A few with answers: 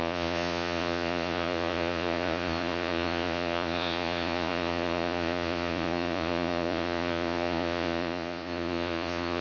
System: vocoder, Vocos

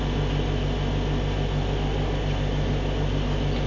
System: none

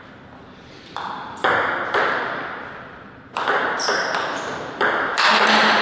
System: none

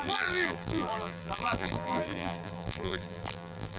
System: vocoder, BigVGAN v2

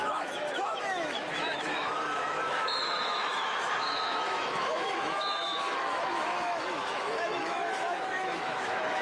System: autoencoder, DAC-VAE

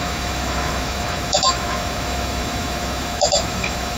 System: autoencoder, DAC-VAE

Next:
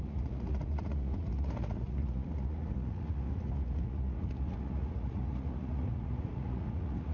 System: vocoder, Vocos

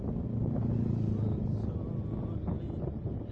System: none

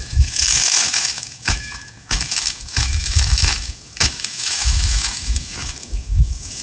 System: autoencoder, DAC-VAE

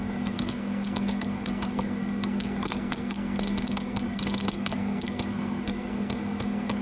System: codec, SNAC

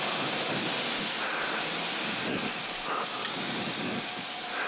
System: none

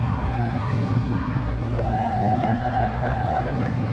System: codec, SNAC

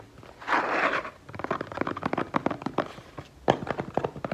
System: none